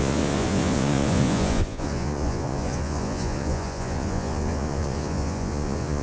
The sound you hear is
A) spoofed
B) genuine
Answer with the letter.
A